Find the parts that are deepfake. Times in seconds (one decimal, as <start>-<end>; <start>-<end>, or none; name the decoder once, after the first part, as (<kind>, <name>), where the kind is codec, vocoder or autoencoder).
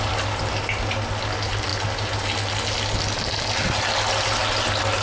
none